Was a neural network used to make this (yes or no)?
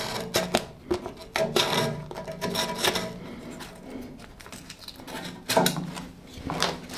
no